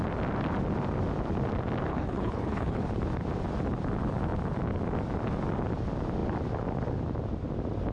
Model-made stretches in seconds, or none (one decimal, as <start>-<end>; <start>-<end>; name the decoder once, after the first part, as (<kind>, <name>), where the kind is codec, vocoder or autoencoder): 1.9-2.8 (codec, HILCodec)